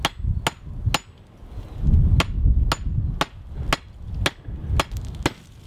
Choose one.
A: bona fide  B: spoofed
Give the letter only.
A